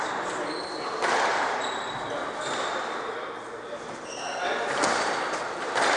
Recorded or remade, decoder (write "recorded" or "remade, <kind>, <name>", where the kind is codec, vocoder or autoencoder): recorded